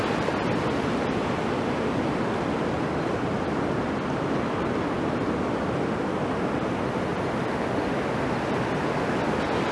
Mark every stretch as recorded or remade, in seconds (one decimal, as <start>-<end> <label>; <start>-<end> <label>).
0.0-9.7 recorded